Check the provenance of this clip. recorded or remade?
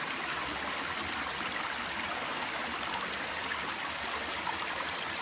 recorded